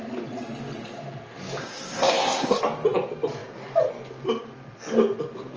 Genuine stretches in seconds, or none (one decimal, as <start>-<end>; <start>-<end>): 0.0-1.6; 2.6-5.6

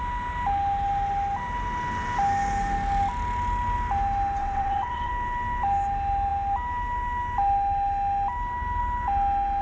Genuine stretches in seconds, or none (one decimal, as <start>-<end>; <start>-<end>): 0.0-4.4; 5.1-9.6

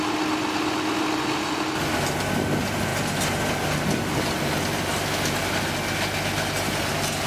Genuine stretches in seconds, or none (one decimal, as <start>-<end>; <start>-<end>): 0.0-7.3

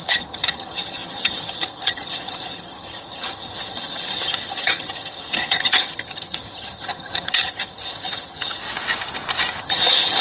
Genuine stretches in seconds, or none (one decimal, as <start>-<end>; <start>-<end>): 8.6-9.6

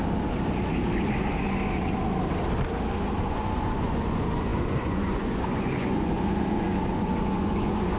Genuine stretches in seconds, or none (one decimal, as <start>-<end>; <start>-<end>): 0.0-3.2

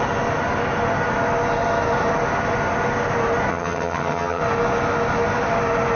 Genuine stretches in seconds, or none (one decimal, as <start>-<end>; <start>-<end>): 0.0-3.5; 4.4-6.0

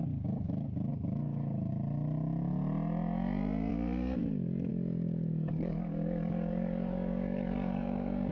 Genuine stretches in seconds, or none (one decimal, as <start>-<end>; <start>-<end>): 0.0-0.9; 1.7-3.7; 4.2-4.7

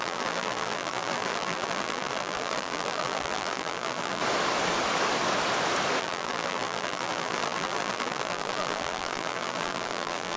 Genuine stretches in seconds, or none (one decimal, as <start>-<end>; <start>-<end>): 4.2-6.0